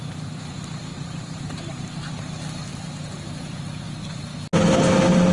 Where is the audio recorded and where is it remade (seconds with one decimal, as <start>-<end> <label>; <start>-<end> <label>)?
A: 0.0-0.9 recorded; 0.9-2.2 remade; 2.2-2.7 recorded; 2.7-4.2 remade; 4.2-5.3 recorded